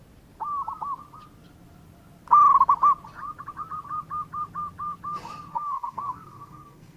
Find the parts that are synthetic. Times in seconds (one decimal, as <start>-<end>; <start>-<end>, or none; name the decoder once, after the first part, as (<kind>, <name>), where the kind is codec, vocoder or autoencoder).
5.5-7.0 (codec, SNAC)